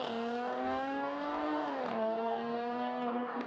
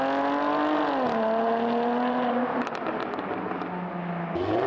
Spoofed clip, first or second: first